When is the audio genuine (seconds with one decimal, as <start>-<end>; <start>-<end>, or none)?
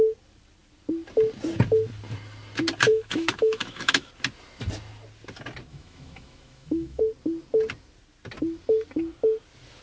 0.0-2.9; 4.1-5.7; 7.0-9.8